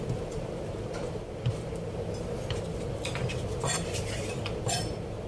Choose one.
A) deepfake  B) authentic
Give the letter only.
A